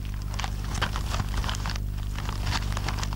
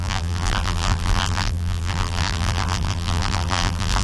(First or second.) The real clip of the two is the first